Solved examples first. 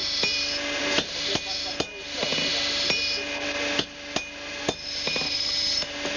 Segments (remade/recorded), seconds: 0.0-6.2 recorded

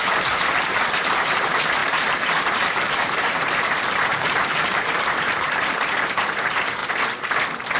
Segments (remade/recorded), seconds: 0.0-6.8 remade; 6.8-7.8 recorded

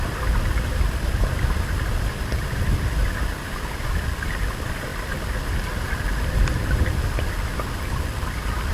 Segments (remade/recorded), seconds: 0.0-8.7 recorded

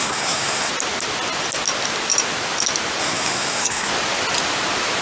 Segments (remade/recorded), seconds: 0.0-0.7 remade; 0.7-3.0 recorded; 3.0-3.9 remade; 3.9-5.0 recorded

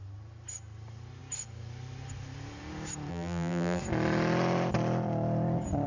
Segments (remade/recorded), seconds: 0.0-3.1 recorded; 3.1-3.8 remade; 3.8-5.9 recorded

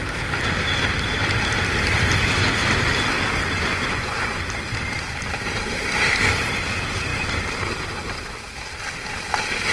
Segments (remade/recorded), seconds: 0.0-3.7 recorded; 3.7-4.4 remade; 4.4-9.7 recorded

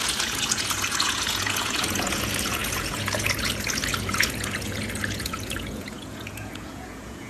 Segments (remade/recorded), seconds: 0.0-7.3 remade

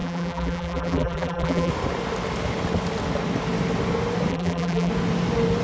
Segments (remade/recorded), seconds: 0.0-1.7 remade; 1.7-4.3 recorded; 4.3-4.9 remade; 4.9-5.6 recorded